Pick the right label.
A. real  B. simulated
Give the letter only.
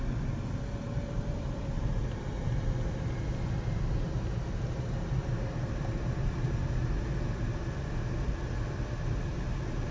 A